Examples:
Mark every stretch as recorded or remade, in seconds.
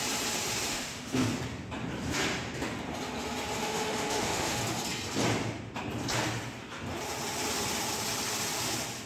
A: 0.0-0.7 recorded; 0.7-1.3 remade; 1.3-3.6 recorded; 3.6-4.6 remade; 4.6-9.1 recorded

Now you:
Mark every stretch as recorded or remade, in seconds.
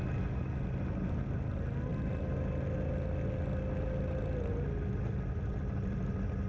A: 0.0-6.5 recorded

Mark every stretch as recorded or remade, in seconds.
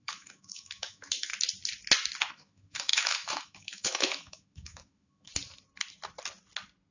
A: 0.0-1.3 remade; 1.3-2.3 recorded; 2.3-5.3 remade; 5.3-6.9 recorded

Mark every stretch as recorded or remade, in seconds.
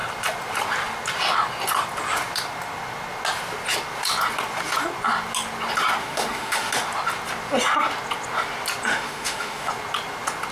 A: 0.0-6.0 recorded; 6.0-6.7 remade; 6.7-8.9 recorded; 8.9-9.7 remade; 9.7-10.5 recorded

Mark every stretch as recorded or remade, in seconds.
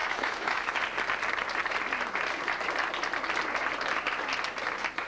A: 0.0-0.8 remade; 0.8-5.1 recorded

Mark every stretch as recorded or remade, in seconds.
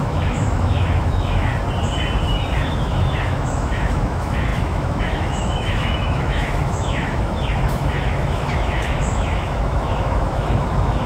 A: 0.0-1.5 remade; 1.5-2.5 recorded; 2.5-11.1 remade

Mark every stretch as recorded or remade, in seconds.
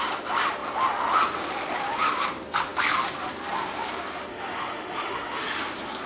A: 0.0-4.3 recorded; 4.3-5.4 remade; 5.4-6.1 recorded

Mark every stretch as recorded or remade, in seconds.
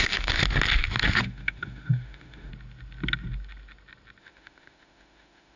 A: 0.0-0.4 remade; 0.4-1.2 recorded; 1.2-2.5 remade; 2.5-4.2 recorded; 4.2-5.6 remade